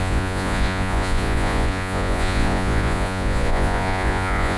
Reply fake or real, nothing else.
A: fake